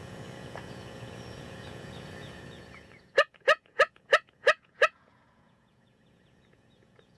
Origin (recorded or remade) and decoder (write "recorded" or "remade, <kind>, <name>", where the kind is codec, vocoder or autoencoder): remade, vocoder, Vocos